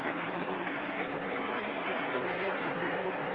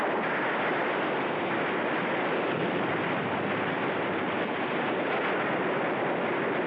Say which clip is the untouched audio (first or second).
second